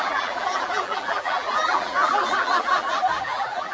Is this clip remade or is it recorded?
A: remade